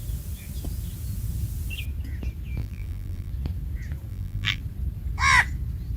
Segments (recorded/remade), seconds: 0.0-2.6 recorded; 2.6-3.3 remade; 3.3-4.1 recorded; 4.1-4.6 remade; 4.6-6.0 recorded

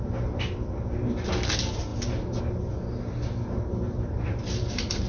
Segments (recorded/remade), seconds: 0.0-5.1 recorded

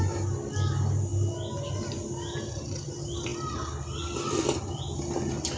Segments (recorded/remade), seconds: 0.0-5.6 recorded

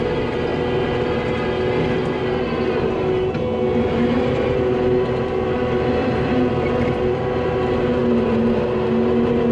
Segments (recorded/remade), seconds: 0.0-6.0 recorded; 6.0-7.2 remade; 7.2-9.5 recorded

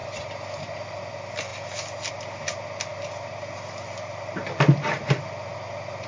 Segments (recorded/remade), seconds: 0.0-0.6 remade; 0.6-1.5 recorded; 1.5-2.1 remade; 2.1-6.1 recorded